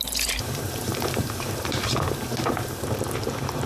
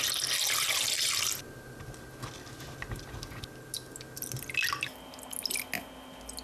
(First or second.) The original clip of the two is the second